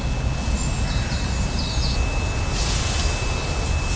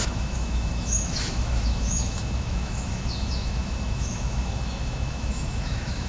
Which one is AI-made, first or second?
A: second